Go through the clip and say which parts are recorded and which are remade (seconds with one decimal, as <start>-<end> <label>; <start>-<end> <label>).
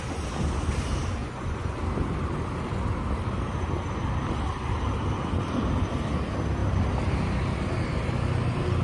0.0-1.2 recorded; 1.2-1.8 remade; 1.8-8.8 recorded